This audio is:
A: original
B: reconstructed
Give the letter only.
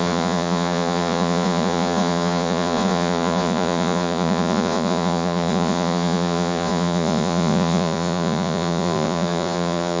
B